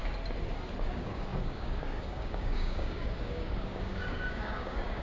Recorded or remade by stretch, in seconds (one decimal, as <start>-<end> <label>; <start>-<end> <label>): 0.0-0.9 recorded; 0.9-5.0 remade

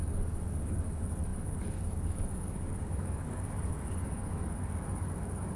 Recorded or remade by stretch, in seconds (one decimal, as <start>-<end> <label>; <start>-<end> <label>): 0.0-5.6 remade

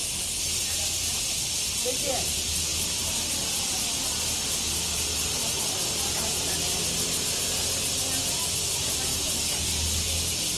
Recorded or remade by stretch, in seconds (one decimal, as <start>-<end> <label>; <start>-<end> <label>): 0.0-9.1 recorded; 9.1-9.7 remade; 9.7-10.6 recorded

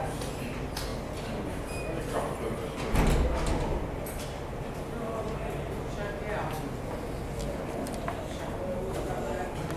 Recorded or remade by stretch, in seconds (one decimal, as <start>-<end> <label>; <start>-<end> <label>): 0.0-9.8 recorded

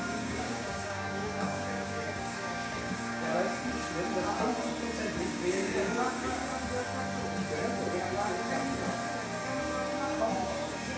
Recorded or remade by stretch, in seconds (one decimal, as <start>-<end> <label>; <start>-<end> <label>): 0.0-3.3 remade; 3.3-5.2 recorded; 5.2-6.4 remade; 6.4-9.6 recorded; 9.6-11.0 remade